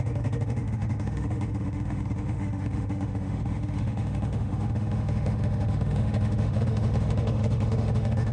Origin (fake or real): fake